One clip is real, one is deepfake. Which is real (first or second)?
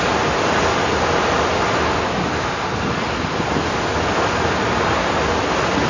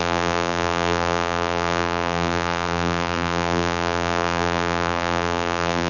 first